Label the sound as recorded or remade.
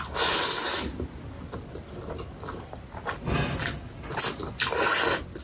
recorded